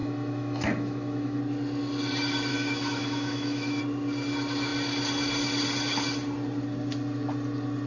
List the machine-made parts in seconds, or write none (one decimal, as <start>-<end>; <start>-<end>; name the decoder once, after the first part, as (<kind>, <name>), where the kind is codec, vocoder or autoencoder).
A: 0.0-1.4 (autoencoder, DAC-VAE); 2.5-3.8